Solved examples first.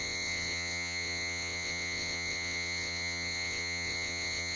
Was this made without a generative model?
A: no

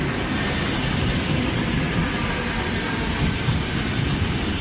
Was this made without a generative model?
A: yes